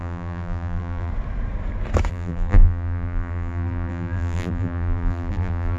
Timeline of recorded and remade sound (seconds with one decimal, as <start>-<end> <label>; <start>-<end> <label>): 0.0-1.1 remade; 1.1-2.1 recorded; 2.1-5.8 remade